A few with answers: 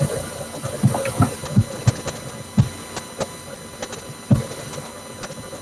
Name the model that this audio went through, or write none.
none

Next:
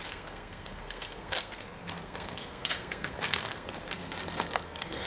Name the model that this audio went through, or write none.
codec, SNAC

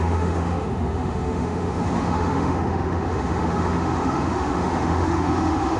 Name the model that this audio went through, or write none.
autoencoder, DAC-VAE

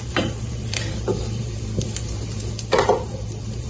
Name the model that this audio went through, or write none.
vocoder, BigVGAN v2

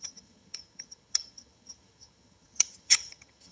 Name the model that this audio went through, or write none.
vocoder, HiFi-GAN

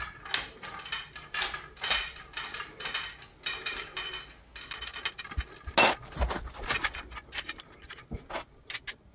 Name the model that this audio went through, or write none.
none